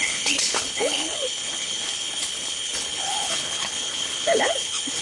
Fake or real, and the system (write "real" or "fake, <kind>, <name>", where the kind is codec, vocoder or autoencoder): fake, codec, HILCodec